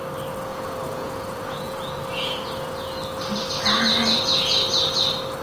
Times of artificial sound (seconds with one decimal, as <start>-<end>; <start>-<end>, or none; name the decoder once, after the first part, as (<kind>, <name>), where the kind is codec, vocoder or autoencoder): 0.5-3.0 (vocoder, Vocos)